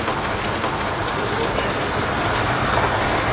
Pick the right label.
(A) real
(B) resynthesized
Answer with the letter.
A